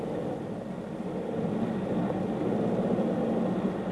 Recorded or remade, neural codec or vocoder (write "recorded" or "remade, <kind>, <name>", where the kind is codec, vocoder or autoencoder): recorded